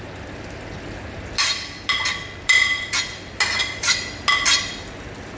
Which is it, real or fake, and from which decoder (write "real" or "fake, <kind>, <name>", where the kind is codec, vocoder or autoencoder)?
real